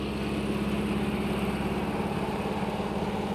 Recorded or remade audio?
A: recorded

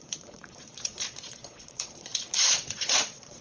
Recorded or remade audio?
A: remade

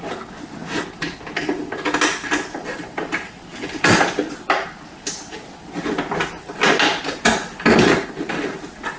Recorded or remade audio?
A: recorded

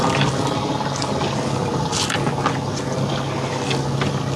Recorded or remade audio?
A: recorded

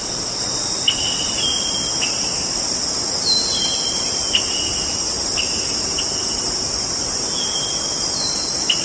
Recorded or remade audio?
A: recorded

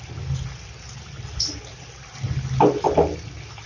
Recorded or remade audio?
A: recorded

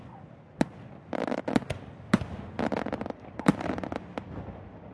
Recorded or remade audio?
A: recorded